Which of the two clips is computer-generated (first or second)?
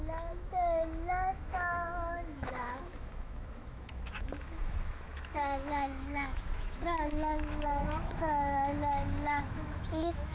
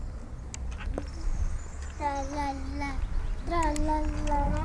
first